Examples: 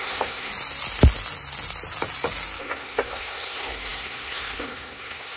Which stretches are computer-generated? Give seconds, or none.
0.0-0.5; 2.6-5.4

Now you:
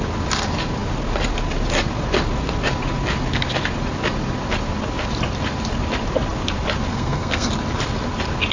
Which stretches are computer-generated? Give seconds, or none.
6.9-7.5

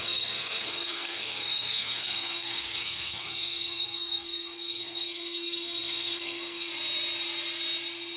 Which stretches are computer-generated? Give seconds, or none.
0.0-6.7

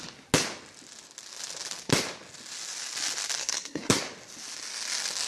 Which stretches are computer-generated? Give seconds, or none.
3.4-4.0